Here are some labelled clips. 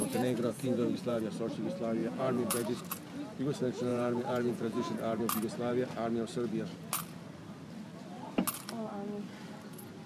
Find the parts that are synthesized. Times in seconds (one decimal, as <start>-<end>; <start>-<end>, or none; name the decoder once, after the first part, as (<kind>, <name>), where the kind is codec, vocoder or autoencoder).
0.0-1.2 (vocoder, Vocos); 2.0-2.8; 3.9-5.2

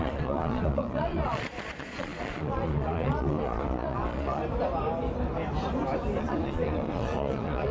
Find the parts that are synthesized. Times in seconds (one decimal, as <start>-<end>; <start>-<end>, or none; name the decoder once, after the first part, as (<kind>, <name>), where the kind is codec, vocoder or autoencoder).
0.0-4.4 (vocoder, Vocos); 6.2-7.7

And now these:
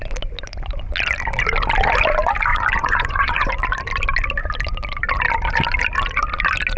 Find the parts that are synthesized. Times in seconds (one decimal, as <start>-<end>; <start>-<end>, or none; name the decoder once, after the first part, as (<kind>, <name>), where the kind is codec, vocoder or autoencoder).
2.5-3.5 (vocoder, Vocos)

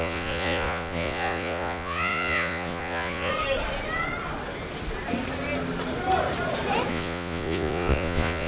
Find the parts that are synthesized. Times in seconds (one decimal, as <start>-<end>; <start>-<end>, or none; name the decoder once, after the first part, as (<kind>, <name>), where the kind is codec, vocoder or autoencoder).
0.0-3.3 (vocoder, Vocos); 6.9-8.5

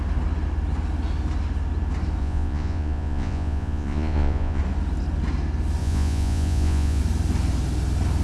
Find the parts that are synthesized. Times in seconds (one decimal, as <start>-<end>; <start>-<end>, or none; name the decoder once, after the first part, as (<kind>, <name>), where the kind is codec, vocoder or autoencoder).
2.2-4.6 (vocoder, Vocos); 5.8-7.0

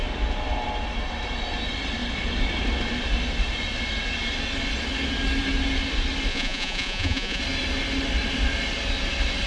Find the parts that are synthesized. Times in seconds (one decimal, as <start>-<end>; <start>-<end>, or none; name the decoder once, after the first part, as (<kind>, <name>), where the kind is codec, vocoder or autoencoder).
6.3-7.4 (vocoder, Vocos)